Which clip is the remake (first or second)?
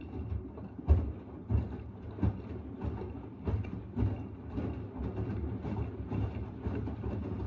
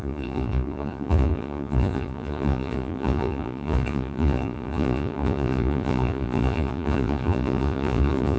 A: second